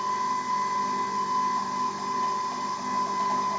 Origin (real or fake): real